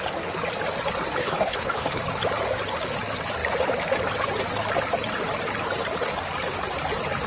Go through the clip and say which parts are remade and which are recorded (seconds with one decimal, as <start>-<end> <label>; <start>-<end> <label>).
0.0-1.2 recorded; 1.2-2.0 remade; 2.0-7.3 recorded